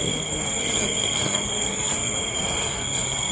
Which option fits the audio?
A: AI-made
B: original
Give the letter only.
A